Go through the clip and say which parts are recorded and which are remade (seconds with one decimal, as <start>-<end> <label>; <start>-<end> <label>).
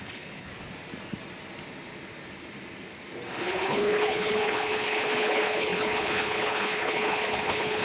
0.0-0.5 remade; 0.5-3.3 recorded; 3.3-7.8 remade